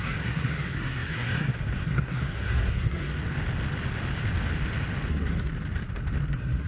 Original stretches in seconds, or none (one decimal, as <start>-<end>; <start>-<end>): 3.1-5.1; 5.5-6.3